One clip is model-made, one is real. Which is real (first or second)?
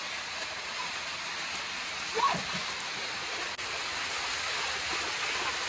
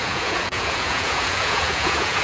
first